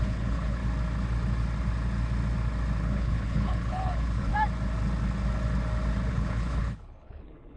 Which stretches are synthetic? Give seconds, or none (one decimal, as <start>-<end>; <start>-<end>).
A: 0.0-0.6; 2.8-4.3; 6.1-7.6